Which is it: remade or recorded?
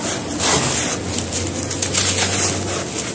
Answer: recorded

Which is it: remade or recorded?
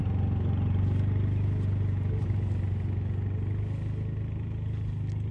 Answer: recorded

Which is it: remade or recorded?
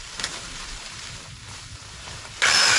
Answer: recorded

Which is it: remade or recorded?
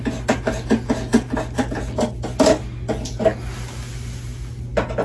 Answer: recorded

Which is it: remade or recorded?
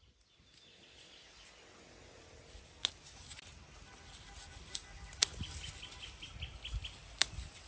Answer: recorded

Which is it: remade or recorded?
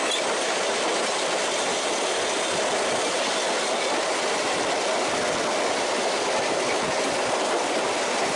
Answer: recorded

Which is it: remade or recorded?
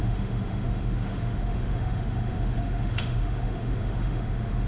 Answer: remade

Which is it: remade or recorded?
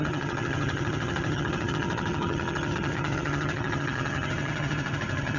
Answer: remade